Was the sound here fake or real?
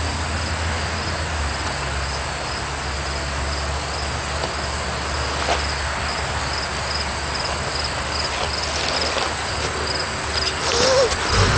real